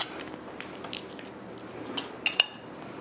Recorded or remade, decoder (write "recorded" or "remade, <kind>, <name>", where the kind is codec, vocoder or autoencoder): recorded